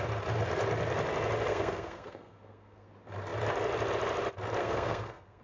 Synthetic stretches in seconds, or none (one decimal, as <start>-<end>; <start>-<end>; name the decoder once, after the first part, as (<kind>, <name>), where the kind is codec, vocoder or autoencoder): 1.5-2.9 (codec, SNAC); 4.6-5.4